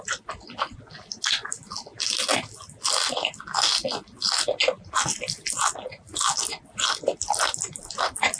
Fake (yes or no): no